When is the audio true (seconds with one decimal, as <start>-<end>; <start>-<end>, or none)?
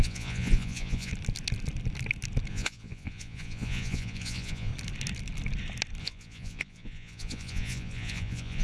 1.1-2.5; 4.7-6.0